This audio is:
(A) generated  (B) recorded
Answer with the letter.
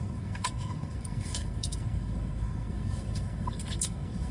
A